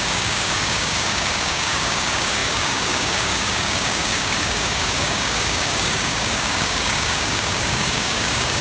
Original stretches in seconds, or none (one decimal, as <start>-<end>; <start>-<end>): none